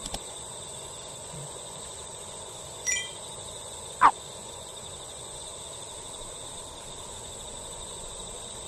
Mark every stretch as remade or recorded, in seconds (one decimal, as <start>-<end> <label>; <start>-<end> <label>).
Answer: 0.0-5.5 remade; 5.5-7.1 recorded; 7.1-8.7 remade